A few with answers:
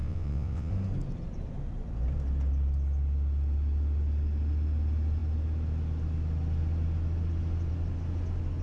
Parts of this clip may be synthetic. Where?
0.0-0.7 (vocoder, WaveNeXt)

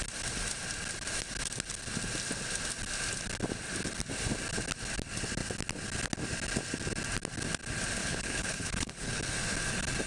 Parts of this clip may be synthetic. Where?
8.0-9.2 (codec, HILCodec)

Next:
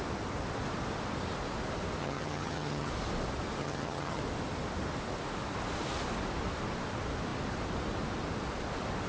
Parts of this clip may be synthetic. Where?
2.0-2.9 (vocoder, HiFi-GAN); 3.6-4.2

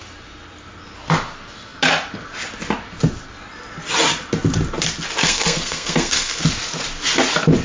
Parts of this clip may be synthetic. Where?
5.2-6.4 (codec, SNAC)

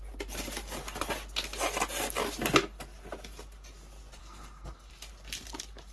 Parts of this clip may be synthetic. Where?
4.2-4.9 (codec, SNAC)